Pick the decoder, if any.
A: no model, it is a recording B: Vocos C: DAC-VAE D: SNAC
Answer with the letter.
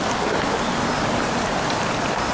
A